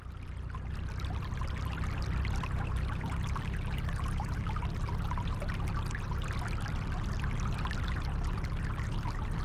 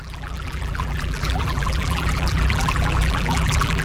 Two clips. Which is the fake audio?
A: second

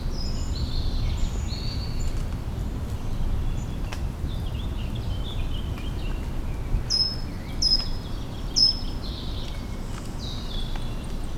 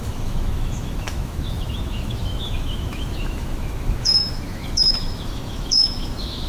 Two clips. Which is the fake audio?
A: second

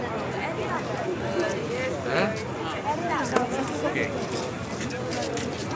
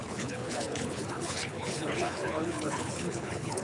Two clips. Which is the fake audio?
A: second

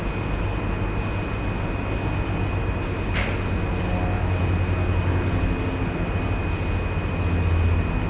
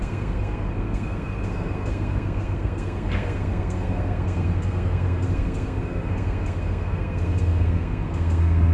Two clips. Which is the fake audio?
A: second